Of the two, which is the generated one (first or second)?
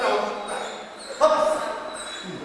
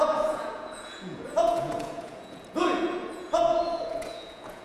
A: second